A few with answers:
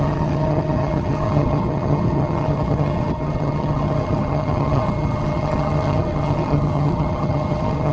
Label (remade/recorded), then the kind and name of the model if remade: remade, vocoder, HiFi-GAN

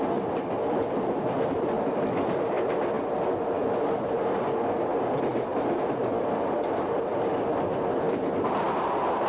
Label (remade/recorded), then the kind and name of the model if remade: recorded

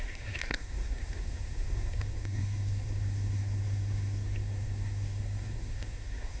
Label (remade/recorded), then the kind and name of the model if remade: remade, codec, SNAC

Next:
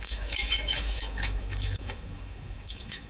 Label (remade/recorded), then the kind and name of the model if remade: remade, autoencoder, DAC-VAE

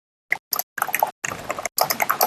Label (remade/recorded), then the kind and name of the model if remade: recorded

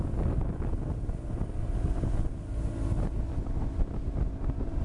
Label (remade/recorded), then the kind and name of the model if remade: recorded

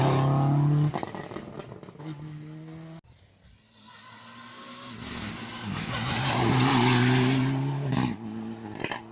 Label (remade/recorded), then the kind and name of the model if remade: recorded